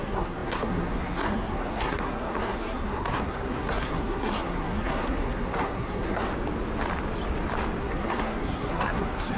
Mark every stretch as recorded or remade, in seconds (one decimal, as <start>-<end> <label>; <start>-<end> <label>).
0.0-6.3 remade; 6.3-7.8 recorded; 7.8-9.4 remade